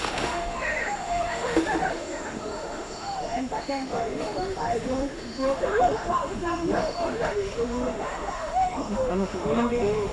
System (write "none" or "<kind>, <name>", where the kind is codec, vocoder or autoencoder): autoencoder, DAC-VAE